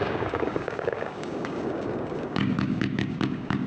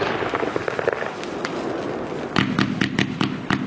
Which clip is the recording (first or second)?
second